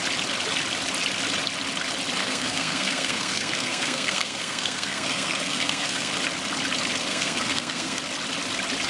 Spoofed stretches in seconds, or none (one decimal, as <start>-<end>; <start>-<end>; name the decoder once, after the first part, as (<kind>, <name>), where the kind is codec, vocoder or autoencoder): 2.2-6.1 (codec, SNAC); 7.1-8.0